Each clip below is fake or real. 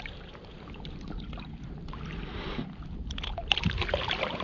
fake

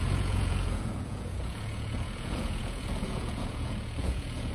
fake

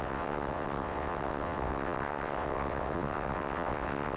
fake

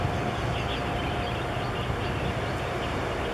real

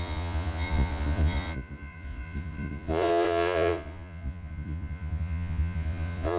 fake